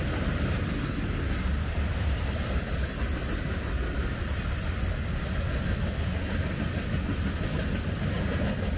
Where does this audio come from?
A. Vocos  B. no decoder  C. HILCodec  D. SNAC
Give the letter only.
B